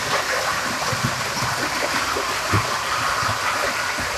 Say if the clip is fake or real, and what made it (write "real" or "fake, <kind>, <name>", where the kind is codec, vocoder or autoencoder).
fake, vocoder, BigVGAN v2